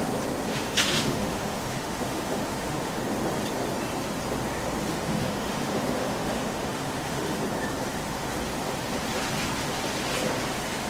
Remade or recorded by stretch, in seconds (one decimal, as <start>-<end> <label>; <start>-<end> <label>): 0.0-0.5 recorded; 0.5-3.0 remade; 3.0-4.9 recorded; 4.9-7.4 remade; 7.4-10.9 recorded